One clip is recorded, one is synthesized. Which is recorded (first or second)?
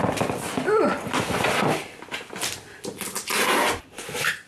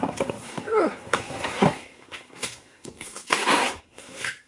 first